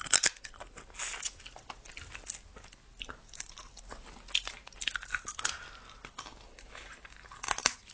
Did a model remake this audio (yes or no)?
no